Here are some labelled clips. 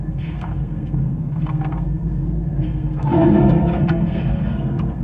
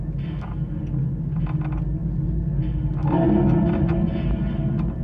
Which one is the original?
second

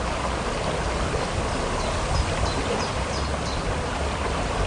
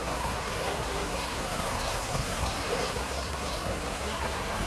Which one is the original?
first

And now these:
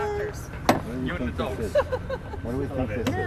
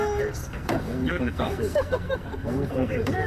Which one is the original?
first